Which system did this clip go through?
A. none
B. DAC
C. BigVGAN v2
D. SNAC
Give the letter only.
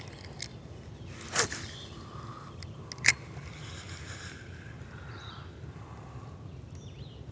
A